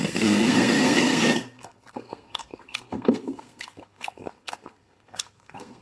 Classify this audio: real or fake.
fake